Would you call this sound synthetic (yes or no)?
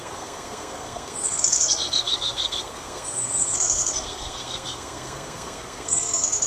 yes